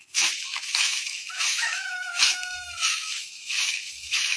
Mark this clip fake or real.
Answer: fake